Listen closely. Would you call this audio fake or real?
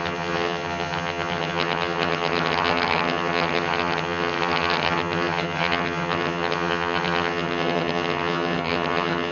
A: fake